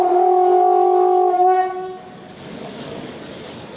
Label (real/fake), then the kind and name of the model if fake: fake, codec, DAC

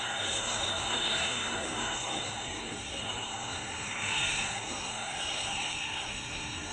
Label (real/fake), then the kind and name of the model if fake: fake, codec, SNAC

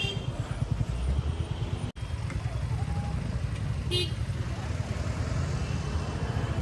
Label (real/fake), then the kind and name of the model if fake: real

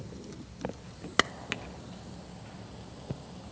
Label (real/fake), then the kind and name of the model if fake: real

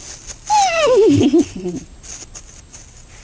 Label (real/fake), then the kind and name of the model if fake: real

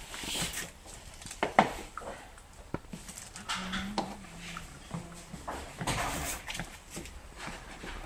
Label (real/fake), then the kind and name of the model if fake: real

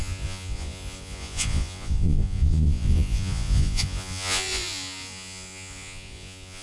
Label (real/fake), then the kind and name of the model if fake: fake, vocoder, Vocos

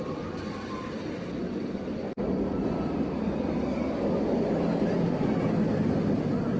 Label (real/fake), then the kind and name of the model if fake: real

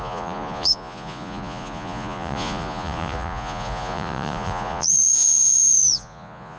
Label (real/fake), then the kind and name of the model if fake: fake, vocoder, Vocos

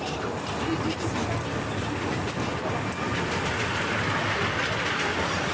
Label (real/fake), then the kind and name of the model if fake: real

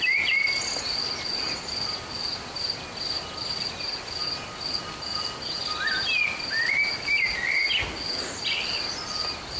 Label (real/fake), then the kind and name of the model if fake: real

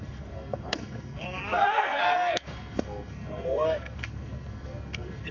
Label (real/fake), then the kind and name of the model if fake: fake, codec, SNAC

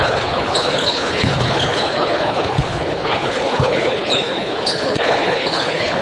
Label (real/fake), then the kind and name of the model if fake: fake, codec, HILCodec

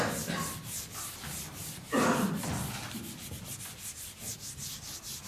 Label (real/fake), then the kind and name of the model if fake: real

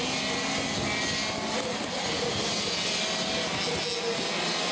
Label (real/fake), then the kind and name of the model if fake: real